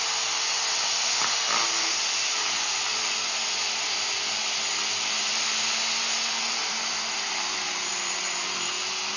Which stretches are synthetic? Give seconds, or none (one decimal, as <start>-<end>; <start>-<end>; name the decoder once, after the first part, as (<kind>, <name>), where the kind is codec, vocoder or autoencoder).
none